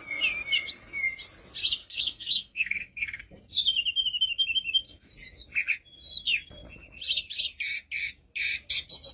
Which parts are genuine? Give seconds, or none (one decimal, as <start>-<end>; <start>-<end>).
0.0-1.8; 3.2-9.1